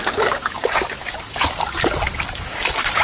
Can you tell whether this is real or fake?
fake